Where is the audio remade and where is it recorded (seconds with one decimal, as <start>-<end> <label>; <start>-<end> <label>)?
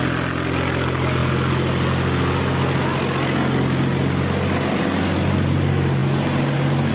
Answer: 0.0-6.9 recorded